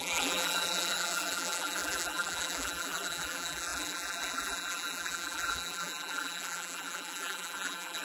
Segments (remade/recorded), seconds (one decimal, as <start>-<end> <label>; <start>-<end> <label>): 0.0-8.0 remade